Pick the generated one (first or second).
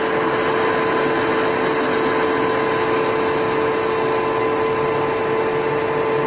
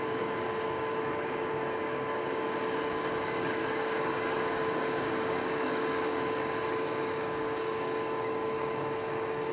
second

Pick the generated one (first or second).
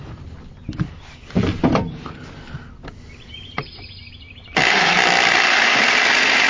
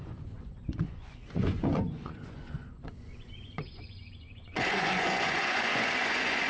second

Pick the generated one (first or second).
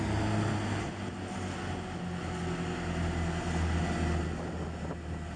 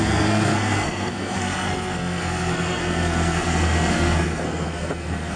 second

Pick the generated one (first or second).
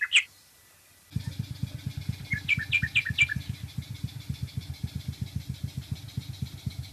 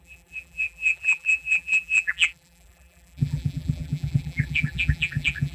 second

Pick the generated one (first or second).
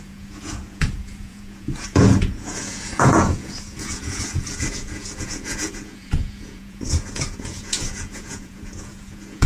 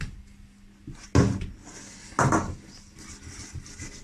first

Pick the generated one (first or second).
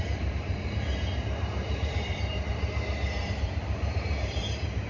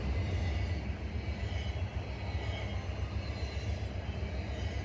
first